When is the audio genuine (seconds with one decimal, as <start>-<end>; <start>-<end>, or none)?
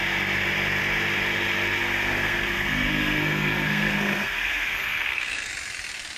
0.0-1.8; 5.5-6.2